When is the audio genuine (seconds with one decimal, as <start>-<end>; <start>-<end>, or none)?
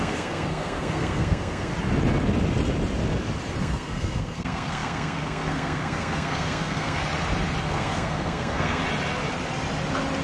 1.7-3.6; 7.0-7.6; 8.8-10.2